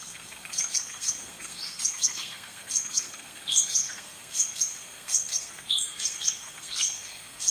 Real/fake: fake